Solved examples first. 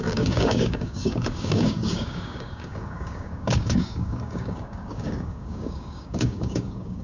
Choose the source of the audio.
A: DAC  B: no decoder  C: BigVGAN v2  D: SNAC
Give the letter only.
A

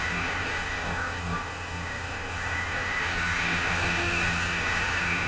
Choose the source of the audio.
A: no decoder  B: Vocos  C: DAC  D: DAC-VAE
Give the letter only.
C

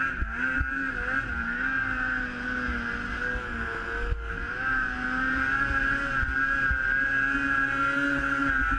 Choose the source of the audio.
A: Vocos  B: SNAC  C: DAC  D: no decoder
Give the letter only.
D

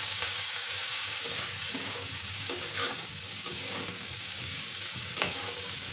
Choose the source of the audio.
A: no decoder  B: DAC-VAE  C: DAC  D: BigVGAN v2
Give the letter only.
C